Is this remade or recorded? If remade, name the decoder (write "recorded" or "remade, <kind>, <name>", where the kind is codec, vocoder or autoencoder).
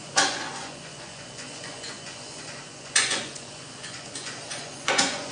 remade, vocoder, Vocos